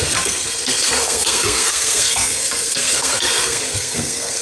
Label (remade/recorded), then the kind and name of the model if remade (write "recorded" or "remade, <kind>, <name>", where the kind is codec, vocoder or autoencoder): remade, codec, SNAC